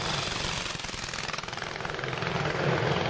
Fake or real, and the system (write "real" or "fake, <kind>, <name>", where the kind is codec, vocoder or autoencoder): real